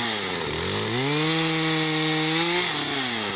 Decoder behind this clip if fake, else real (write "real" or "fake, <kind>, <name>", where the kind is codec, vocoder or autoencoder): real